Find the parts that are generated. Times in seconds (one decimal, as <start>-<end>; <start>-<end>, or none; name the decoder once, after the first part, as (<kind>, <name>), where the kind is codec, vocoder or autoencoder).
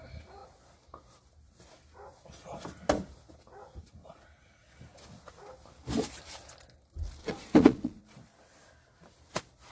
7.2-8.0 (vocoder, Vocos)